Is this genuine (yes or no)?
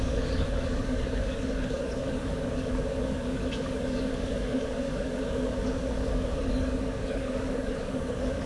no